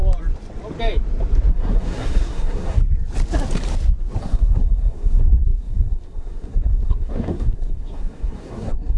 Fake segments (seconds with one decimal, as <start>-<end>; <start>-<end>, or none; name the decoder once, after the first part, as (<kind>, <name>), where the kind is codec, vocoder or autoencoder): 1.5-2.8 (codec, SNAC); 4.2-9.0